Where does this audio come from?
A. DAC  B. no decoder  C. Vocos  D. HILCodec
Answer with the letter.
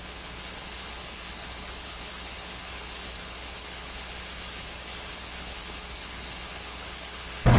D